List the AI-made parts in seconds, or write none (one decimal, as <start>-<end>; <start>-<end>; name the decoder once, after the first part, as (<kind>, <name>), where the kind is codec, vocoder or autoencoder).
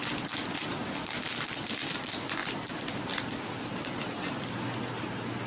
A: 0.0-2.4 (vocoder, BigVGAN v2); 4.8-5.5